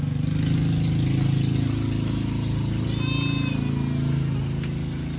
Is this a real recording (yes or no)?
yes